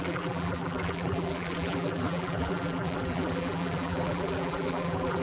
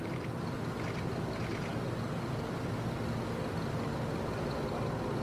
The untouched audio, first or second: second